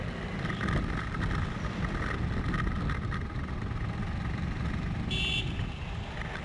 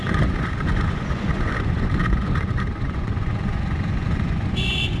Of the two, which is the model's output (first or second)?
second